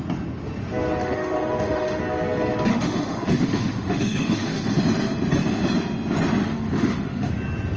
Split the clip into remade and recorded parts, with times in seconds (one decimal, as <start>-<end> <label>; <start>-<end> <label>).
0.0-1.0 recorded; 1.0-2.0 remade; 2.0-2.7 recorded; 2.7-4.8 remade; 4.8-6.4 recorded; 6.4-7.3 remade; 7.3-7.8 recorded